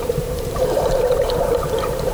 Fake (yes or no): yes